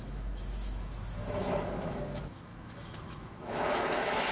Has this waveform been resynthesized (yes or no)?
yes